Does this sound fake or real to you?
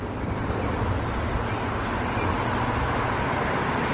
real